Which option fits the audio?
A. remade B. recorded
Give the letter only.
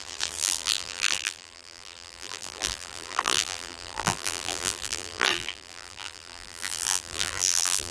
A